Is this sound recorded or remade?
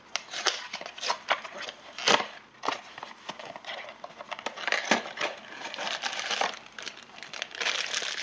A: recorded